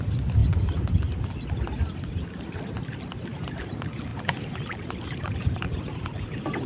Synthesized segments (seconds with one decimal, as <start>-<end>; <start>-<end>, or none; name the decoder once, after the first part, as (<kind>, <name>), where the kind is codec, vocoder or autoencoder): 0.0-0.4 (vocoder, BigVGAN v2); 3.5-6.7